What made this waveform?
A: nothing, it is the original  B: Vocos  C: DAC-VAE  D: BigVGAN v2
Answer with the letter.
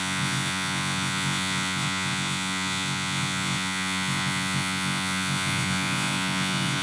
B